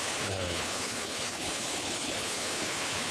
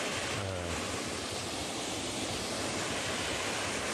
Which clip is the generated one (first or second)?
first